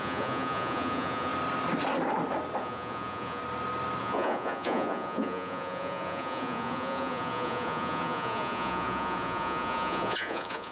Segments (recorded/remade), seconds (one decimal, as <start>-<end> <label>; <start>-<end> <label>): 0.0-1.3 remade; 1.3-2.6 recorded; 2.6-3.4 remade; 3.4-4.0 recorded; 4.0-10.7 remade